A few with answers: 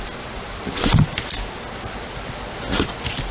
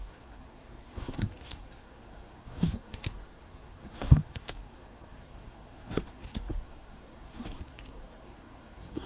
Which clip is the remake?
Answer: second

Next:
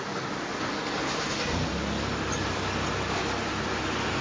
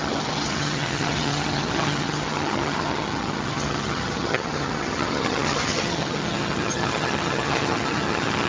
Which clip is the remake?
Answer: second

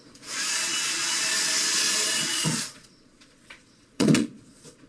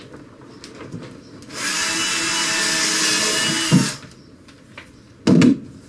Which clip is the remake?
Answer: first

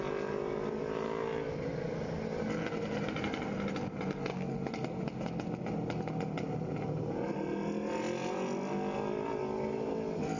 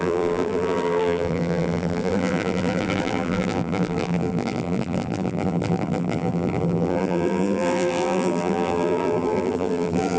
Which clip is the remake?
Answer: second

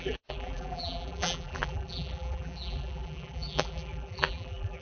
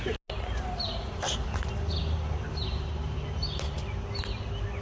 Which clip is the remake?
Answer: first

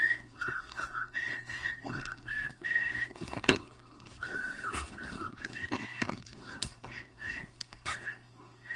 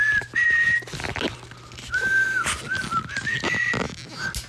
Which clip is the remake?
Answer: first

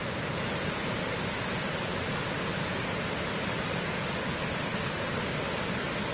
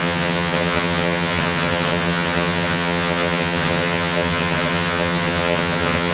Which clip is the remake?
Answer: second